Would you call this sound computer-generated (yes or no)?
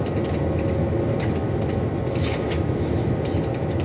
no